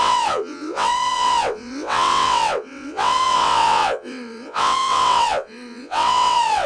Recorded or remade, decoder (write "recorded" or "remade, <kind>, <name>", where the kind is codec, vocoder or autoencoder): remade, vocoder, WaveNeXt